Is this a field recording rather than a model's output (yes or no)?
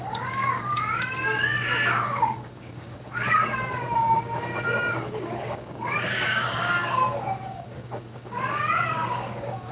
no